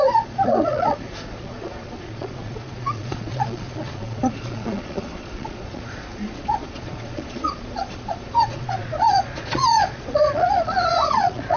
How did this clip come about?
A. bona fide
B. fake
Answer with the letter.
B